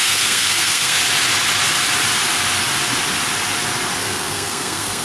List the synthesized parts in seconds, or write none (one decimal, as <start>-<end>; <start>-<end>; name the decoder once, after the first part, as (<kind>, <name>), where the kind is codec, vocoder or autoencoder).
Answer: 0.0-1.0 (codec, SNAC); 4.0-5.0

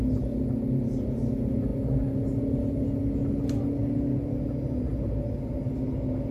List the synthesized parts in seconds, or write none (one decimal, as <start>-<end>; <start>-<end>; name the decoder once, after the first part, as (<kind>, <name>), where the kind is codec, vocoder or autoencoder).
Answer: none

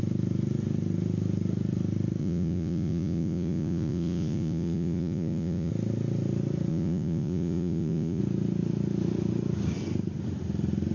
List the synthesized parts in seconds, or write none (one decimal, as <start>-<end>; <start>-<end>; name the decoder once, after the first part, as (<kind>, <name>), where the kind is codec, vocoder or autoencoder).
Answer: 2.2-5.7 (vocoder, Vocos); 6.7-8.2

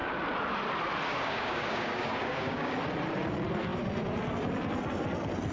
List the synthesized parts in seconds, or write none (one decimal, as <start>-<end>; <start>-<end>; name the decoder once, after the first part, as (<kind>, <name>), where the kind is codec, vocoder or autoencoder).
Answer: 1.1-2.7 (codec, DAC)